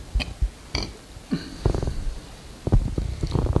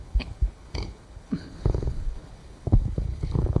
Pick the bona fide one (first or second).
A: first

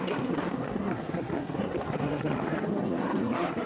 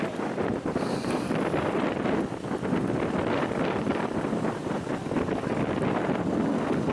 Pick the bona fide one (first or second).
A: second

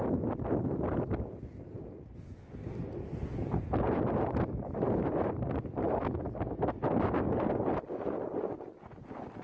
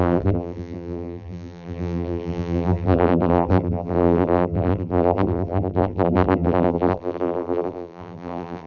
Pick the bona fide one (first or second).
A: first